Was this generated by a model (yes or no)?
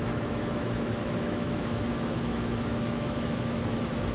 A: yes